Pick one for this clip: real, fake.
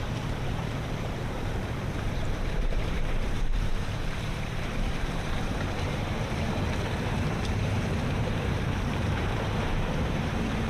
fake